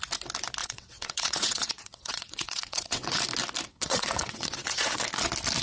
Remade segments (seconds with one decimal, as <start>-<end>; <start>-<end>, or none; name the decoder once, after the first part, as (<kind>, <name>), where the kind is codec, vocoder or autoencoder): 0.6-3.2 (vocoder, WaveNeXt); 3.7-5.0